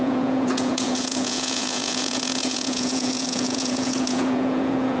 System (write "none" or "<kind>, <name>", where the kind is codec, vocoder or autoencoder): vocoder, Vocos